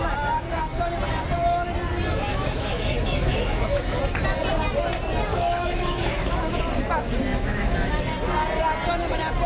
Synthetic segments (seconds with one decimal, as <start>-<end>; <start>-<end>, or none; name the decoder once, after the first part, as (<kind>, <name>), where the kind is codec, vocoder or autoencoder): 2.3-4.0 (autoencoder, DAC-VAE); 5.3-6.6; 7.3-8.0